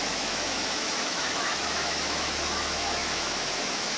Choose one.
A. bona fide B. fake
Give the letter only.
B